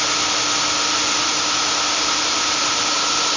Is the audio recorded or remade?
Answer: recorded